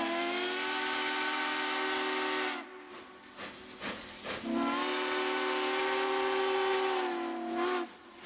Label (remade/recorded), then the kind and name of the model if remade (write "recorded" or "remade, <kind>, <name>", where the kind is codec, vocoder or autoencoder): recorded